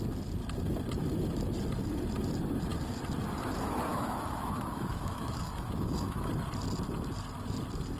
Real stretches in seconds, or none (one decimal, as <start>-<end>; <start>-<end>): 0.0-3.9; 6.3-8.0